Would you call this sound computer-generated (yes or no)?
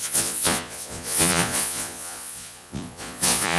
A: yes